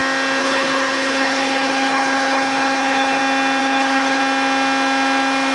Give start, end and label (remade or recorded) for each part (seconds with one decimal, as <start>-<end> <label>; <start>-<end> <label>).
0.0-0.4 recorded; 0.4-3.2 remade; 3.2-3.6 recorded; 3.6-4.2 remade; 4.2-5.5 recorded